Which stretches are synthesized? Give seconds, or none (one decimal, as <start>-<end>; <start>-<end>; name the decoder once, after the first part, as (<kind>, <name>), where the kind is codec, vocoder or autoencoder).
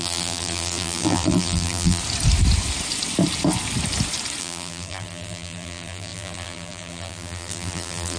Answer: 0.0-2.0 (vocoder, BigVGAN v2); 4.4-8.2